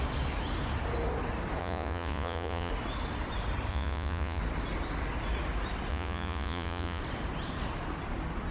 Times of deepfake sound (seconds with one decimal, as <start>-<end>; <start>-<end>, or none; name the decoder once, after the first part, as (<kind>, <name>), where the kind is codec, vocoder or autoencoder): 1.6-2.7 (vocoder, Vocos); 3.7-4.4; 5.9-7.0